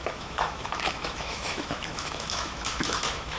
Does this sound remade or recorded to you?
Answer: remade